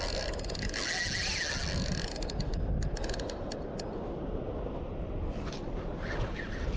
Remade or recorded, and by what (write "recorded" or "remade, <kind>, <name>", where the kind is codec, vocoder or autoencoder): recorded